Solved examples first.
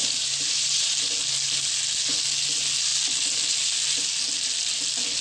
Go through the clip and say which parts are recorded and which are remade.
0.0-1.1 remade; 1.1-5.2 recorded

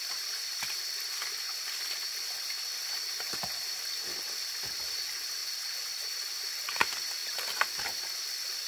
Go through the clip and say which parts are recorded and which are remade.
0.0-8.7 recorded